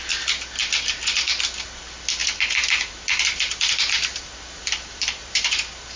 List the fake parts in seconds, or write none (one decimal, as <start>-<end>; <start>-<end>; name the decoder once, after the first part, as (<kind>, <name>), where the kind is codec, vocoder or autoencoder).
2.2-6.0 (vocoder, BigVGAN v2)